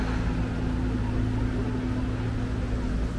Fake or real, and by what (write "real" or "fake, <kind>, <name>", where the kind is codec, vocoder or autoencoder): real